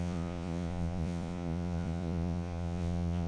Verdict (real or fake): fake